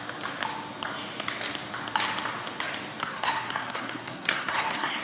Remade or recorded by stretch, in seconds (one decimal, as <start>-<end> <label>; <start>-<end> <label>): 0.0-3.0 recorded; 3.0-5.0 remade